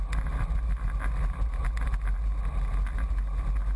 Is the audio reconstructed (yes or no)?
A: no